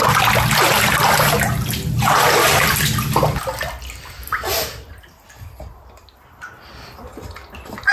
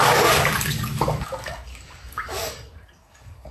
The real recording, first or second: first